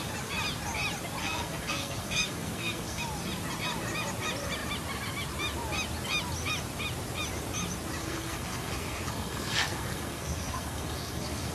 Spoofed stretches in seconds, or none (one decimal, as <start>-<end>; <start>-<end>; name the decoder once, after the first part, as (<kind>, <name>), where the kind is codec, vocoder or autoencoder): 1.2-3.0 (codec, SNAC); 8.0-11.5